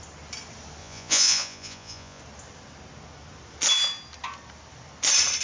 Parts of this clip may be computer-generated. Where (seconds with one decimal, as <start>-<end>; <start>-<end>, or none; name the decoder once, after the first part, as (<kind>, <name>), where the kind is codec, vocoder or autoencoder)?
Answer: 0.8-2.2 (vocoder, Vocos)